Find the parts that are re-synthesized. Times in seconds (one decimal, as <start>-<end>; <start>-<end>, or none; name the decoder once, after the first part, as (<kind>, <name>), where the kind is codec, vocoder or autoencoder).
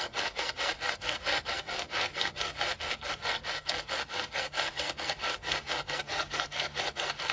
0.0-7.3 (codec, SNAC)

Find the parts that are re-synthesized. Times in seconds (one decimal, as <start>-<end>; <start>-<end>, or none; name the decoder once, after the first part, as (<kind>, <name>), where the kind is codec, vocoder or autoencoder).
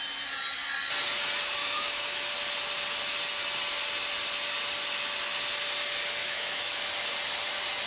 1.6-2.3 (autoencoder, DAC-VAE); 6.2-6.8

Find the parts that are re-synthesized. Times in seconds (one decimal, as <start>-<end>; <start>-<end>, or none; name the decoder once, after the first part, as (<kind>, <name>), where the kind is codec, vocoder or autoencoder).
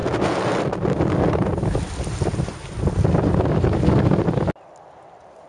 none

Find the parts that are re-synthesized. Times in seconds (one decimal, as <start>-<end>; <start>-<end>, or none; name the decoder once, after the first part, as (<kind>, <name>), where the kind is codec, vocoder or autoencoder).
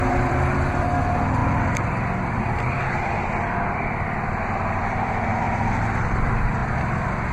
0.0-7.3 (vocoder, BigVGAN v2)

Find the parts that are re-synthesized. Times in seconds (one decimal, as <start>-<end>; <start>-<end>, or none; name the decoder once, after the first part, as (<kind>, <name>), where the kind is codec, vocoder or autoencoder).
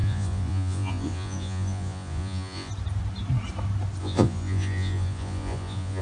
0.0-2.7 (vocoder, Vocos); 4.0-6.0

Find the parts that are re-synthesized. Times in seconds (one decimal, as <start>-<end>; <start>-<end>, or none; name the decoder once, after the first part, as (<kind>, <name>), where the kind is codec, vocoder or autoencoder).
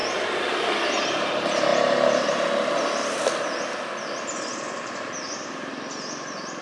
none